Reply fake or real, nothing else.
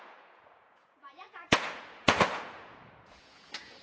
fake